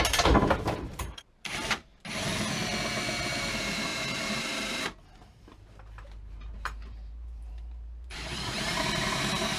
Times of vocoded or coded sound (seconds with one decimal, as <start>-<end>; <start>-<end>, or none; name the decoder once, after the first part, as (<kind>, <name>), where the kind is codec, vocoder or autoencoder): 0.0-1.9 (vocoder, BigVGAN v2); 3.5-9.6

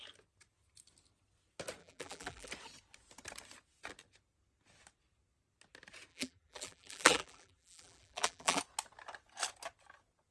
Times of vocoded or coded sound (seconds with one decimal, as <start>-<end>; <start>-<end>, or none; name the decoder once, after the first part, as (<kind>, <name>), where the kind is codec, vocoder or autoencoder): 1.8-2.5 (vocoder, BigVGAN v2); 6.1-8.6

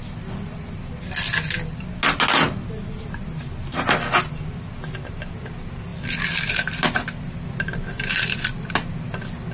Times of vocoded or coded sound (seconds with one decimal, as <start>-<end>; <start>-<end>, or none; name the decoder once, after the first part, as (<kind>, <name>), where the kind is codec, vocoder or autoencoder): 5.9-8.7 (vocoder, BigVGAN v2)

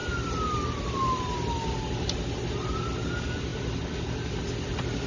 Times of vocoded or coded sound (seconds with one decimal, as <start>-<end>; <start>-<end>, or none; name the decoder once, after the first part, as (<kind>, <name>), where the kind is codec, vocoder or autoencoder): none